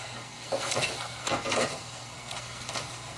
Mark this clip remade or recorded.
remade